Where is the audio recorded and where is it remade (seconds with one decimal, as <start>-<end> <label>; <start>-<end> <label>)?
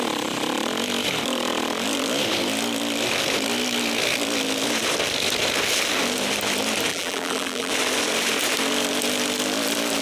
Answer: 0.0-6.9 recorded; 6.9-7.7 remade; 7.7-10.0 recorded